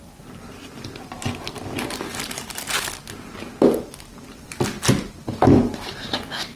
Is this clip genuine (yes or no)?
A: yes